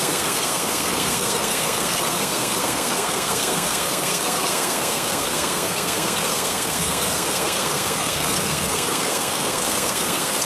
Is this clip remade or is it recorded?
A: remade